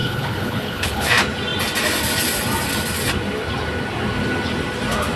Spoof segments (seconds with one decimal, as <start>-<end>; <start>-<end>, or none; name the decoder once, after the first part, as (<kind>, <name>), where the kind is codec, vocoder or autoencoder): 0.0-1.1 (codec, HILCodec)